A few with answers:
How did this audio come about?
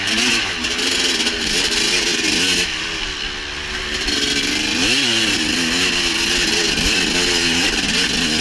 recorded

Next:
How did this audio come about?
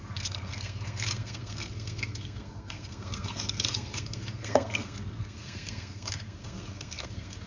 remade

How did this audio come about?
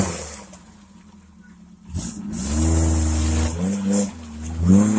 recorded